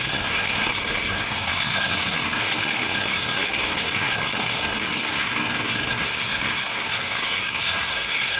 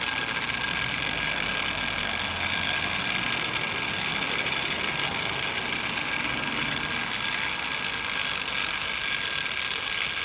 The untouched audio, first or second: second